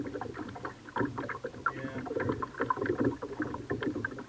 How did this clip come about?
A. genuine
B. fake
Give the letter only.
A